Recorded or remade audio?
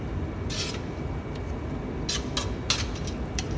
recorded